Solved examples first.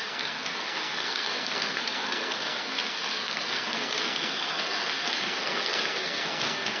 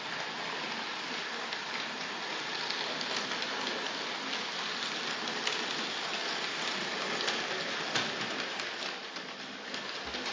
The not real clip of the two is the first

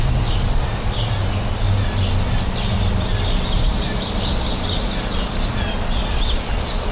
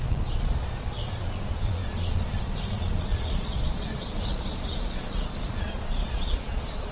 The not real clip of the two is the second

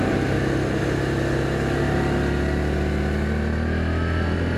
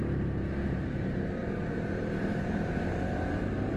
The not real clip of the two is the second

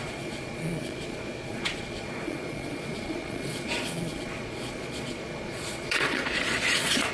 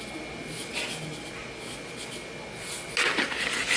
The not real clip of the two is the first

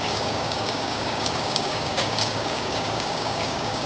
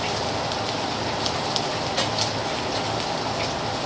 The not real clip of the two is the first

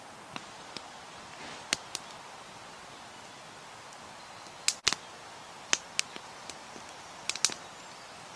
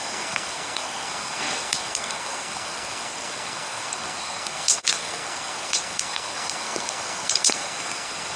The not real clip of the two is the second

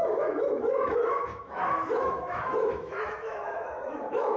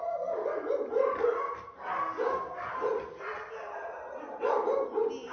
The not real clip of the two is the first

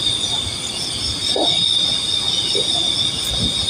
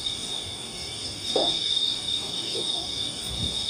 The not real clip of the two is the second